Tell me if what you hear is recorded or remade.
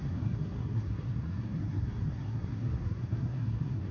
remade